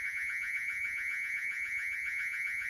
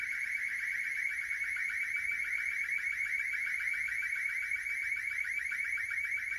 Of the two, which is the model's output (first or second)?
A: first